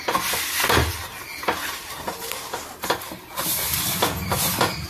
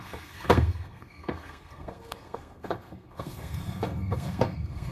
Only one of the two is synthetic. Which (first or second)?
second